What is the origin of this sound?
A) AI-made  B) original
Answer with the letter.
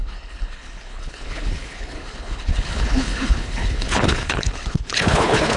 A